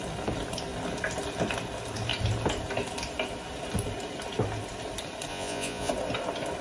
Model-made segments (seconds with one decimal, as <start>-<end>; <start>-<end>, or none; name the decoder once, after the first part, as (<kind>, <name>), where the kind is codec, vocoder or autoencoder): 5.3-5.9 (vocoder, Vocos)